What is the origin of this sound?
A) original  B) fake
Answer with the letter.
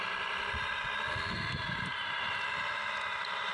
A